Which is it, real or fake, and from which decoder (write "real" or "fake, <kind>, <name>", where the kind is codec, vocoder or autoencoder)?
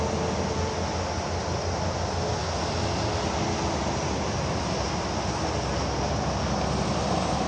real